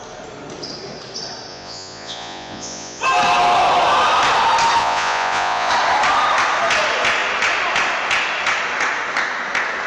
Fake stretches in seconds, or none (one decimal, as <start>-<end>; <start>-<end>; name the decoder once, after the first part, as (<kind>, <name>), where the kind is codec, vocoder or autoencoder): 1.5-3.0 (vocoder, Vocos); 4.8-5.7